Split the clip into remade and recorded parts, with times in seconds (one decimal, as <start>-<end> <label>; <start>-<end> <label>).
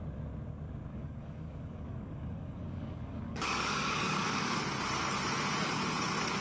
0.0-0.9 recorded; 0.9-4.6 remade; 4.6-6.4 recorded